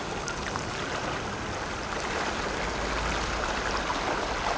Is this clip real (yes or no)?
yes